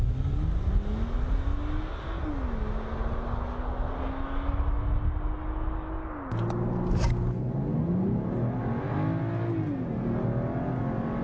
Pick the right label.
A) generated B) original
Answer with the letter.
B